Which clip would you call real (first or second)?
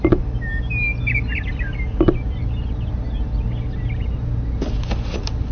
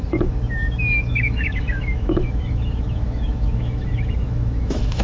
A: first